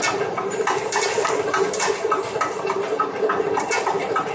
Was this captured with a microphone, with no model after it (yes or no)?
yes